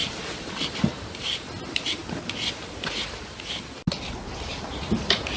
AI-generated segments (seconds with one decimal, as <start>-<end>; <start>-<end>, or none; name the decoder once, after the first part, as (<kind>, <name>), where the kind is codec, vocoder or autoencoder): 0.0-1.5 (vocoder, BigVGAN v2)